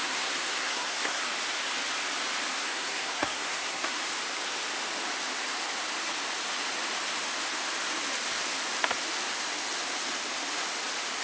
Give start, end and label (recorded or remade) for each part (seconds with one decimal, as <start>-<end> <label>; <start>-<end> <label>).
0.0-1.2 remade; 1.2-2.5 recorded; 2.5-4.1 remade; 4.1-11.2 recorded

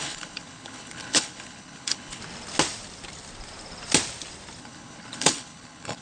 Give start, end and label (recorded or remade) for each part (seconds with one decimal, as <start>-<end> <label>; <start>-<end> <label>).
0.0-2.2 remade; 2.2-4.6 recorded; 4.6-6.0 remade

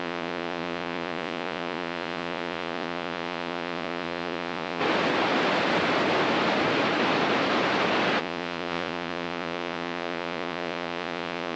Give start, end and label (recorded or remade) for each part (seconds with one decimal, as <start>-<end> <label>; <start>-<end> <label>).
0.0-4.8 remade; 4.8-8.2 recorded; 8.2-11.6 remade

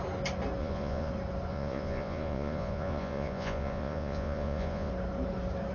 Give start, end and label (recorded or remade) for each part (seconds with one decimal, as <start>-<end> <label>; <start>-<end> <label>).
0.0-0.6 recorded; 0.6-1.1 remade; 1.1-1.5 recorded; 1.5-4.9 remade; 4.9-5.7 recorded

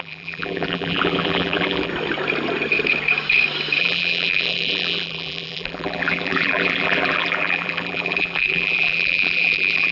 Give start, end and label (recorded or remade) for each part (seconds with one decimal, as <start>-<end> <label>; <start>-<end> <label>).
0.0-1.9 remade; 1.9-3.8 recorded; 3.8-9.9 remade